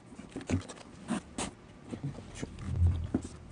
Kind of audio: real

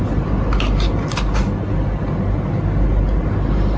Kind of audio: real